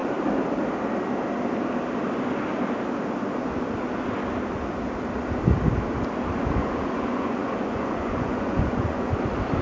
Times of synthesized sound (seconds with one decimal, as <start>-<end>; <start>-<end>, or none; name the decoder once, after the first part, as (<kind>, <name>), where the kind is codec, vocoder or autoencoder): 6.6-9.1 (vocoder, Vocos)